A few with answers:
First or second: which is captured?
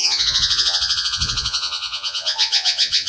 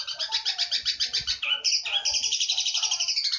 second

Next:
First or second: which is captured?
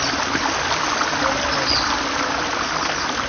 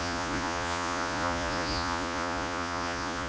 first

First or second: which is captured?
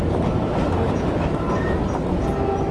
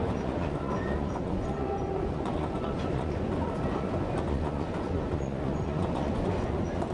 first